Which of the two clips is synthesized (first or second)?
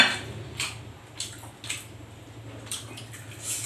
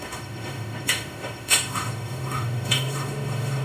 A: second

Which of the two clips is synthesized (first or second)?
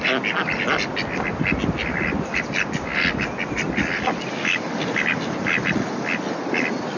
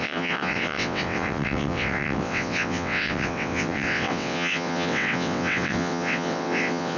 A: second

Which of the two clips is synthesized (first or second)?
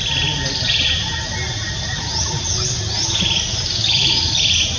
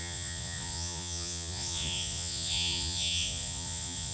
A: second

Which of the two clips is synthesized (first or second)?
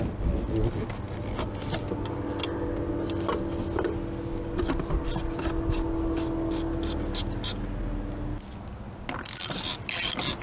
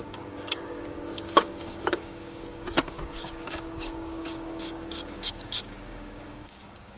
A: second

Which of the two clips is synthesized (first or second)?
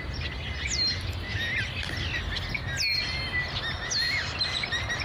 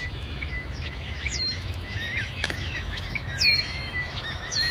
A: second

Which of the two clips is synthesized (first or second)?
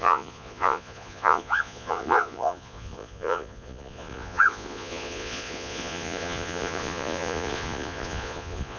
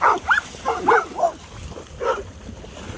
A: first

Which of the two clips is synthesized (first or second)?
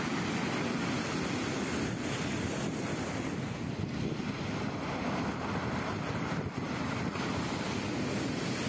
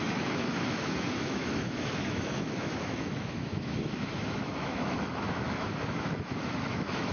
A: second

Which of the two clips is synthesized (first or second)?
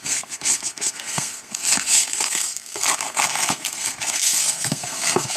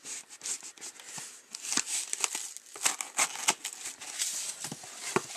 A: first